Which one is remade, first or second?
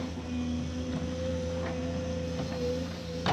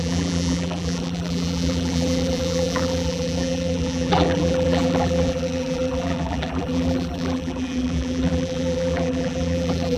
second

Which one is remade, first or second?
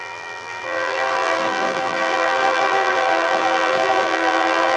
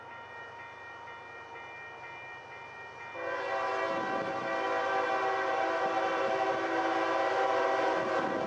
first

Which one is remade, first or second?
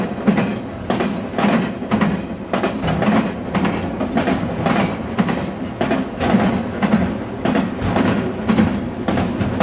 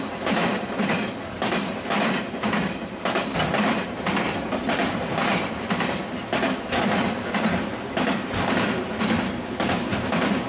second